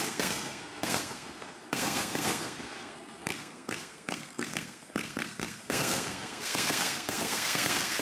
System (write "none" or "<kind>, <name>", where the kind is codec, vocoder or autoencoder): codec, SNAC